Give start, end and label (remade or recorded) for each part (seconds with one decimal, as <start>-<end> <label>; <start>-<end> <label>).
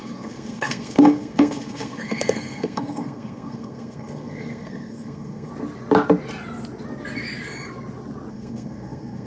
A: 0.0-5.5 remade; 5.5-8.3 recorded; 8.3-9.3 remade